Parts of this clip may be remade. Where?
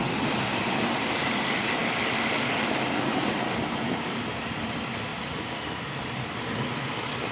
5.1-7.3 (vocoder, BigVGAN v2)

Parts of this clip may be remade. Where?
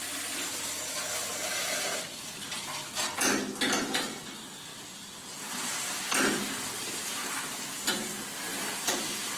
1.2-4.2 (vocoder, BigVGAN v2); 4.7-7.4; 8.5-9.4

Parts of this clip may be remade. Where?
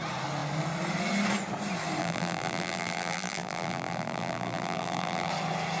2.0-5.3 (vocoder, BigVGAN v2)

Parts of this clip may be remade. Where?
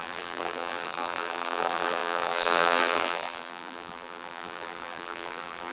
0.0-5.7 (vocoder, BigVGAN v2)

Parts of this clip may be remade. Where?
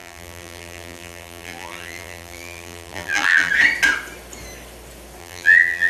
0.0-3.5 (vocoder, BigVGAN v2); 5.2-5.9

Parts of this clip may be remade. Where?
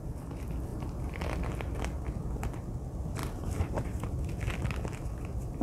0.7-1.2 (vocoder, BigVGAN v2); 3.2-4.0